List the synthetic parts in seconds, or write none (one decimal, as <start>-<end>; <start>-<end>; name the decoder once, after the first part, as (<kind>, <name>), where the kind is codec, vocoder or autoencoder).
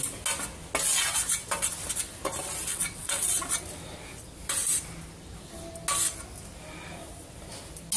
2.7-3.3 (vocoder, WaveNeXt)